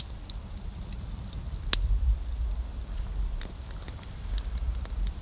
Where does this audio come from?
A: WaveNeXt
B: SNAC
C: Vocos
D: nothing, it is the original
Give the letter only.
D